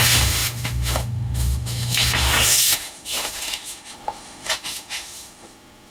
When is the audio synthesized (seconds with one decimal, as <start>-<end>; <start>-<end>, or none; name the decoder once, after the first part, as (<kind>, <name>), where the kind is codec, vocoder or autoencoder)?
0.0-5.9 (autoencoder, DAC-VAE)

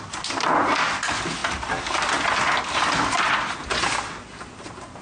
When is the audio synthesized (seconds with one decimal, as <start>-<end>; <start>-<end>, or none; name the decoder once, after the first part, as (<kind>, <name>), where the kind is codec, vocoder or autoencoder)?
none